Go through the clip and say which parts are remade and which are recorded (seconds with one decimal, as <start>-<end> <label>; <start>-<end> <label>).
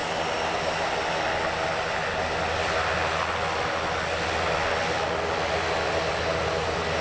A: 0.0-7.0 recorded